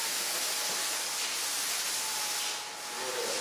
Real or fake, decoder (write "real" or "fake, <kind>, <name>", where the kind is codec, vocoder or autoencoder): real